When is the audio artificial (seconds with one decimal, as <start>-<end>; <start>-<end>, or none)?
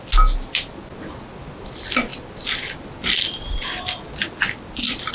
none